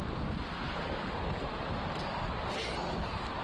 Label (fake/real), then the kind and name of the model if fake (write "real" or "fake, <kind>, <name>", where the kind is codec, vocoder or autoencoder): real